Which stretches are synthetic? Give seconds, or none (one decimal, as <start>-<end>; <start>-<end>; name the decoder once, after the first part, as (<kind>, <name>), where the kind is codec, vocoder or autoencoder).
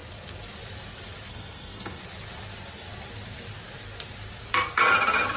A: 1.3-2.0 (codec, SNAC)